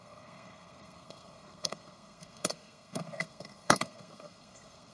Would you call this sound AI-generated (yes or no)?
yes